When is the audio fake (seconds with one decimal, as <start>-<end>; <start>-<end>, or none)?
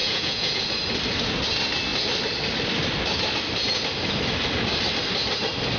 0.0-0.6